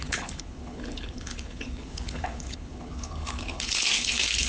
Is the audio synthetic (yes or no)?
yes